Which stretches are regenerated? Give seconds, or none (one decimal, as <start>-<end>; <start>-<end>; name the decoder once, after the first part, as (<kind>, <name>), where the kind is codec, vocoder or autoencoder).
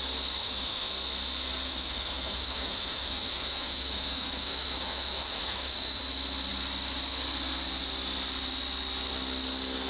0.4-0.9 (autoencoder, DAC-VAE); 1.7-6.0